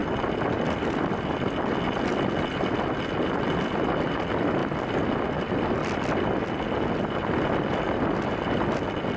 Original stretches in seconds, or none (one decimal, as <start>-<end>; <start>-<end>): 0.0-9.2